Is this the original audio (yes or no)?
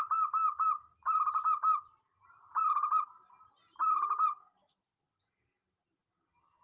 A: yes